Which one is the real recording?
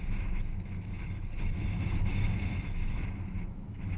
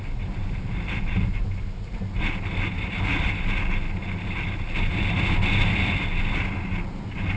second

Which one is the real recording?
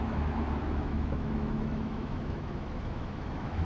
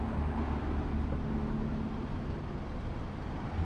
second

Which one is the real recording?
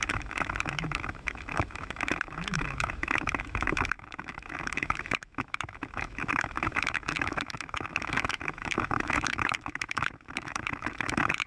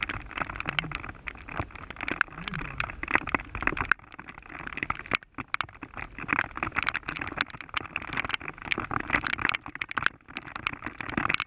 second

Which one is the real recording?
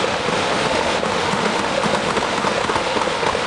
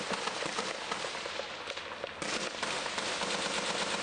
second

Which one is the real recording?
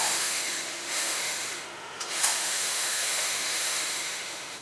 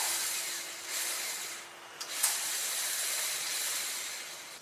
second